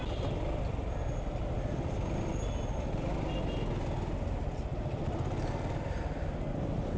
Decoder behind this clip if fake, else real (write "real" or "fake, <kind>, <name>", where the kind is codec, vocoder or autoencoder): real